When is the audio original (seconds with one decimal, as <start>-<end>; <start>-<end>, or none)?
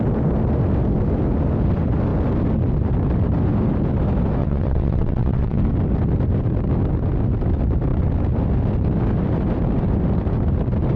0.0-4.4; 5.6-11.0